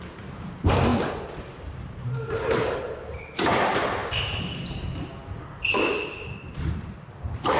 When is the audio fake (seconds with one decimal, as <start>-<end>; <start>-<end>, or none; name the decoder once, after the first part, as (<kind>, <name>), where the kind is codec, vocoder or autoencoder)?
0.0-0.9 (vocoder, BigVGAN v2); 1.4-4.0; 6.2-7.6